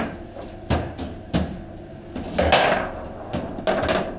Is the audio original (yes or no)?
yes